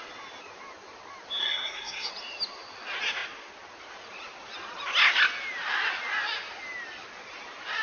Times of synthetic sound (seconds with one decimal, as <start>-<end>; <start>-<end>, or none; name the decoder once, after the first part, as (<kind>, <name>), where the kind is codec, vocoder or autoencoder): 1.4-2.1 (codec, SNAC)